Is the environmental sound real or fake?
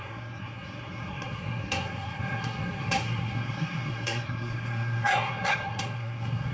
fake